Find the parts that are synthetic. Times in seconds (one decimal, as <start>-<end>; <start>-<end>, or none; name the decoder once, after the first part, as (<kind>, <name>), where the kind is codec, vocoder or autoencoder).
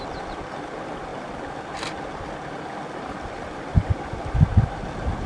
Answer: none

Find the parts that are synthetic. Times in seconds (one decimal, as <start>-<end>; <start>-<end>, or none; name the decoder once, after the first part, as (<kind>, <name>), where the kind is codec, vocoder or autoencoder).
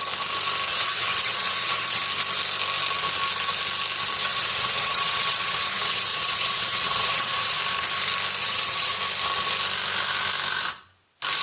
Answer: 0.7-2.0 (vocoder, WaveNeXt); 4.3-7.6; 8.4-9.0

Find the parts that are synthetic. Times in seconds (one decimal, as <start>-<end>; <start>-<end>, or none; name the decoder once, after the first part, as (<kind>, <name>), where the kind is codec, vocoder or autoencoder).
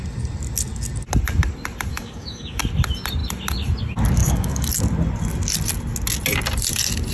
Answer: 1.9-2.6 (codec, DAC); 4.2-4.7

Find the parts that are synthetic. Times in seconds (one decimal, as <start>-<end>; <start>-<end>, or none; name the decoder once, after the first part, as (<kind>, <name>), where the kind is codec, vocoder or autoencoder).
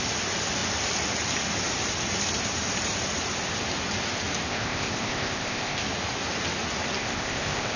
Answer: 4.5-5.8 (codec, ZipCodec); 7.0-7.8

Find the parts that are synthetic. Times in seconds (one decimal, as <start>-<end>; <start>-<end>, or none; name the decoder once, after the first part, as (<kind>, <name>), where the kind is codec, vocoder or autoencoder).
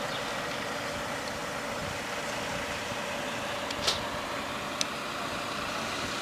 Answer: none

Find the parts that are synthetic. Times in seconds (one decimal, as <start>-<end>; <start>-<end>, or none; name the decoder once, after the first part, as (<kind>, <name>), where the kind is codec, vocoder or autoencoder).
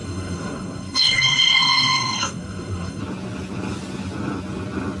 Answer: 0.0-3.0 (codec, SNAC)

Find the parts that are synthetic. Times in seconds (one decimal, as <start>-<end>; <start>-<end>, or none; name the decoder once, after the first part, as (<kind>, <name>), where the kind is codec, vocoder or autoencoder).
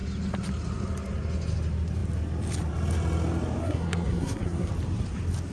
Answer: 3.6-4.7 (codec, SNAC)